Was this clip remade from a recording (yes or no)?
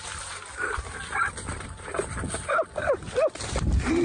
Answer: no